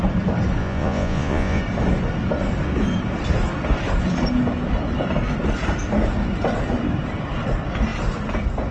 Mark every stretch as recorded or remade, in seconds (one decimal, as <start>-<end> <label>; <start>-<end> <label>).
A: 0.0-0.6 recorded; 0.6-1.6 remade; 1.6-8.7 recorded